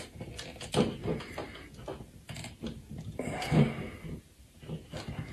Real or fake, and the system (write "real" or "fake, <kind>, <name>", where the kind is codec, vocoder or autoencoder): real